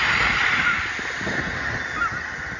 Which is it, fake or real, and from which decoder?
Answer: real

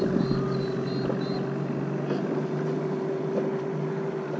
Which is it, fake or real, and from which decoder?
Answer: real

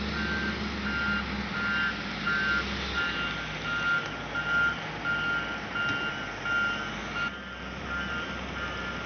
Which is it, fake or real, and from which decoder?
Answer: real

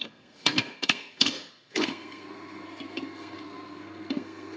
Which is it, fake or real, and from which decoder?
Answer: fake, codec, SNAC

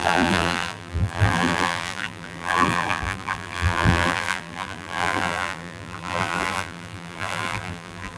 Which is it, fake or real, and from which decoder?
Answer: fake, vocoder, BigVGAN v2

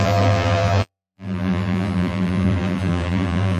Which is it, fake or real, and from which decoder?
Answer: fake, vocoder, BigVGAN v2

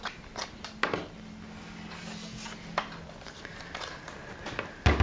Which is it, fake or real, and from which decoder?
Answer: real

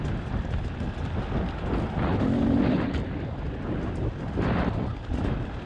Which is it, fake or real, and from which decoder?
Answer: real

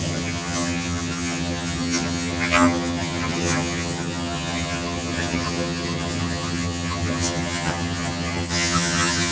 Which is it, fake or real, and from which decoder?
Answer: fake, vocoder, HiFi-GAN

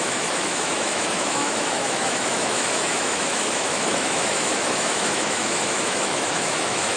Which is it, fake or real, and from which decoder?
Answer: fake, autoencoder, DAC-VAE